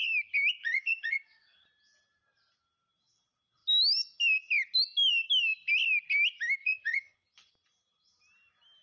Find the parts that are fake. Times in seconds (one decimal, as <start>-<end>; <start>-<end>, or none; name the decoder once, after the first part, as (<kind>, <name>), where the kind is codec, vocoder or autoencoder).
0.6-1.7 (vocoder, Vocos); 6.6-7.5